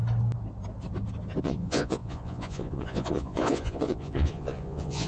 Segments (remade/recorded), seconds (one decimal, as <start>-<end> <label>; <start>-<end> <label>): 0.0-1.4 recorded; 1.4-5.1 remade